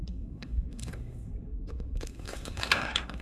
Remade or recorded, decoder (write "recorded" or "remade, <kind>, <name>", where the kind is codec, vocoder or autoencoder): remade, codec, SNAC